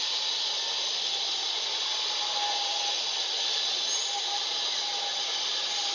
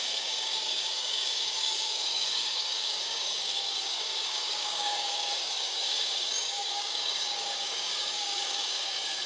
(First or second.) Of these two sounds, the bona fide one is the first